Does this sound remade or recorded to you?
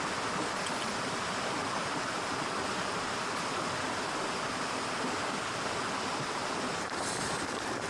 recorded